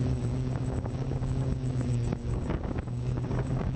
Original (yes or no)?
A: no